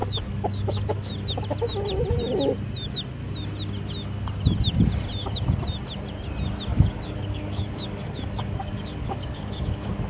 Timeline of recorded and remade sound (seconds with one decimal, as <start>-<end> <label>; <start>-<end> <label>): 0.0-1.1 remade; 1.1-6.7 recorded; 6.7-10.1 remade